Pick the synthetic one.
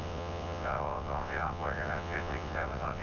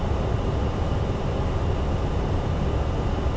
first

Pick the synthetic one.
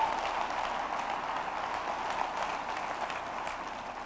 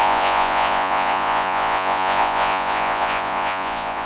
second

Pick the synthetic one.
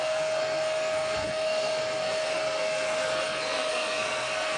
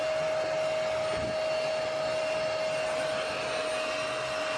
first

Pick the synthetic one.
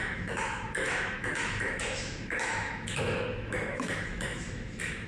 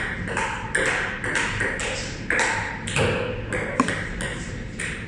first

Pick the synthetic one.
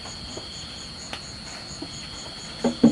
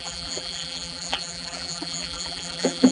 second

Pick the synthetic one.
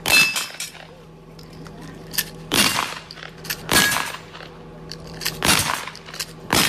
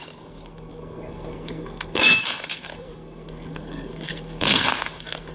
second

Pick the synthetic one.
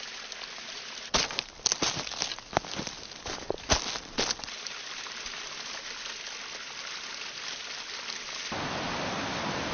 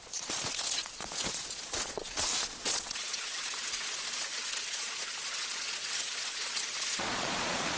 second